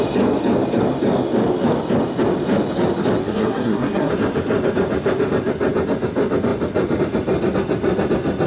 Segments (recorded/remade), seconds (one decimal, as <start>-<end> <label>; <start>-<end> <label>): 0.0-3.2 recorded; 3.2-4.1 remade; 4.1-8.5 recorded